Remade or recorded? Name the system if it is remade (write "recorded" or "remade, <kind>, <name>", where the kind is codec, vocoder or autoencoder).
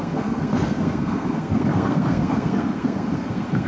remade, codec, SNAC